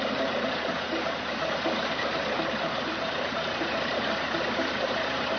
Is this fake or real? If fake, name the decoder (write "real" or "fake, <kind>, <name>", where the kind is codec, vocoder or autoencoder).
fake, vocoder, BigVGAN v2